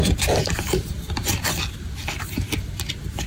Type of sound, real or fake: real